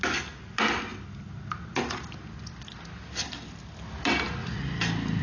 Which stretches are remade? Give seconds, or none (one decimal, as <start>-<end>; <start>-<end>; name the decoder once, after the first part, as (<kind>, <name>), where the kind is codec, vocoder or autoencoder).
none